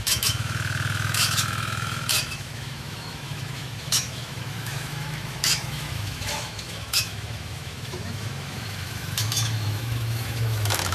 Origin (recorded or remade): remade